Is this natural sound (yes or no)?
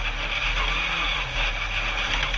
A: yes